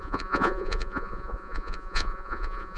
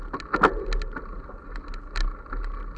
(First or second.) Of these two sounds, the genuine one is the second